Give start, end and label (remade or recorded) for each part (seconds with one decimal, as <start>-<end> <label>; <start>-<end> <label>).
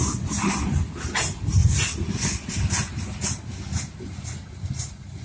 0.0-5.2 recorded